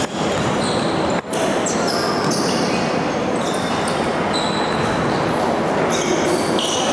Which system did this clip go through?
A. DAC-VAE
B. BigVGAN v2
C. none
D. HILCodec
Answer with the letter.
B